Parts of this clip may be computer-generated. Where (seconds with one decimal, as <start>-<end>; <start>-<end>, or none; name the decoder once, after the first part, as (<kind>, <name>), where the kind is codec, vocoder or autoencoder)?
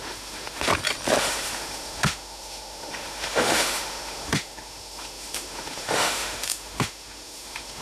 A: 0.0-0.7 (autoencoder, DAC-VAE); 1.2-7.8